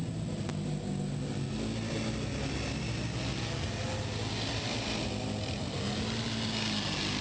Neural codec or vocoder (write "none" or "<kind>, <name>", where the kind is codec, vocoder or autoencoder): none